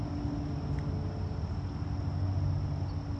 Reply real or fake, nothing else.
real